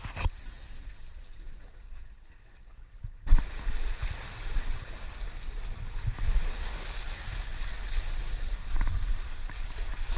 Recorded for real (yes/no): yes